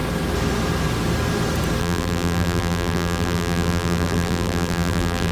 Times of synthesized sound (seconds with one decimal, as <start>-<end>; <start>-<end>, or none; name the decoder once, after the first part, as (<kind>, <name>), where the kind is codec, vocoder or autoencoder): 1.8-5.3 (vocoder, BigVGAN v2)

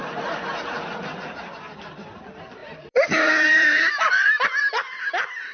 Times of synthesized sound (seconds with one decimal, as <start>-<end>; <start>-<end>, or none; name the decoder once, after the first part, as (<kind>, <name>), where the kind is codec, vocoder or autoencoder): 1.1-2.2 (vocoder, BigVGAN v2); 2.6-4.6

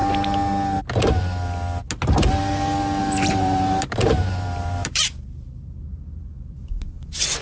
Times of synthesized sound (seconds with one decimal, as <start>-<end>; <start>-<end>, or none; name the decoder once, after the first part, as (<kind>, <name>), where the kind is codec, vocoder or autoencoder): 3.0-7.4 (vocoder, BigVGAN v2)

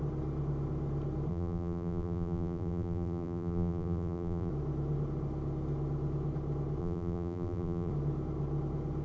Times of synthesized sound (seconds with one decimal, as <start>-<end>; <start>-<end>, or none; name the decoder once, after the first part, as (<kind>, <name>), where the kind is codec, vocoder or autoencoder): 1.3-4.5 (vocoder, BigVGAN v2); 6.8-7.9